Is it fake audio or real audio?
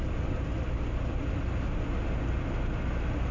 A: real